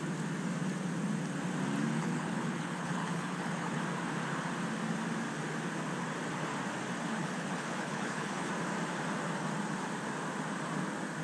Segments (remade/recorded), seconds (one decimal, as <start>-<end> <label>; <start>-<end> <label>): 0.0-2.0 recorded; 2.0-3.8 remade; 3.8-7.2 recorded; 7.2-8.5 remade; 8.5-11.2 recorded